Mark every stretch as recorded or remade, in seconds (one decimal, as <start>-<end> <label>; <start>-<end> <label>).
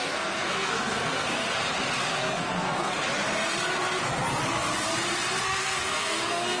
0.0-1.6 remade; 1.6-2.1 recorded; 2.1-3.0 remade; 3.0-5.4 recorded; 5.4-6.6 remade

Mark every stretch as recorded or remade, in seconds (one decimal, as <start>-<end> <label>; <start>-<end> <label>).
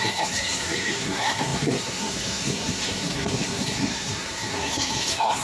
0.0-5.4 remade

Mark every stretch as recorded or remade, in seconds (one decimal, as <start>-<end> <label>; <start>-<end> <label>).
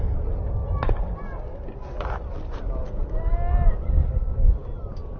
0.0-5.2 recorded